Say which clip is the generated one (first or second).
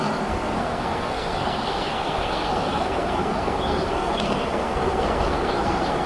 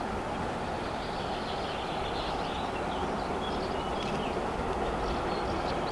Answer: first